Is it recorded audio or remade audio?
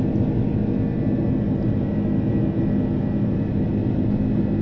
recorded